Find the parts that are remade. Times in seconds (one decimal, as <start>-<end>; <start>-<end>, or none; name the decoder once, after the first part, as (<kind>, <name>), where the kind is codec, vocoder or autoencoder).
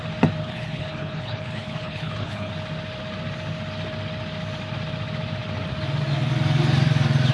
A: 0.4-2.5 (codec, HILCodec)